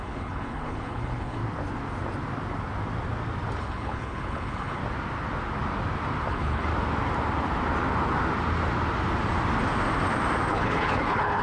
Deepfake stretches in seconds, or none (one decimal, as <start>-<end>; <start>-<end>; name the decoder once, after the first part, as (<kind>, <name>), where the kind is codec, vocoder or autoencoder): 0.0-1.4 (codec, HILCodec); 3.6-4.8; 6.3-6.7; 10.5-11.4